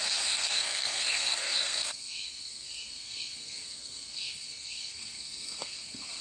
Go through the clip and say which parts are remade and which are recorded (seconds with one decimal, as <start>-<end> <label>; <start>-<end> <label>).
0.0-6.2 remade